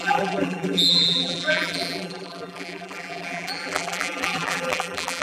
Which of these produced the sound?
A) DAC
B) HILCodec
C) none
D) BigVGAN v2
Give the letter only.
D